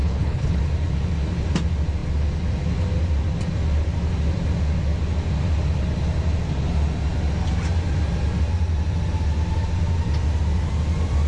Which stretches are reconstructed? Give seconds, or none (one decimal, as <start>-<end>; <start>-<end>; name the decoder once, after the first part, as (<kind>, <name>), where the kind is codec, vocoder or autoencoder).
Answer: 0.0-0.6 (codec, HILCodec)